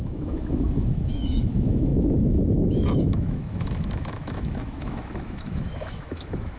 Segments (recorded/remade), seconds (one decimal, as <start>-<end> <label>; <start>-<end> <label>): 0.0-6.6 remade